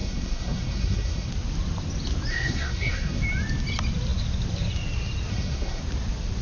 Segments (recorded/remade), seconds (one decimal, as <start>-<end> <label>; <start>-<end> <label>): 0.0-1.3 remade; 1.3-2.3 recorded; 2.3-3.2 remade; 3.2-5.3 recorded; 5.3-5.8 remade; 5.8-6.4 recorded